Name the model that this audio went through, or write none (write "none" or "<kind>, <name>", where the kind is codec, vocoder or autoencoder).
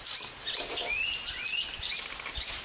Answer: none